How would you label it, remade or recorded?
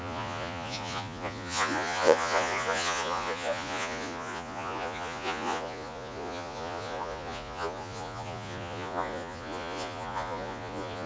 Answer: remade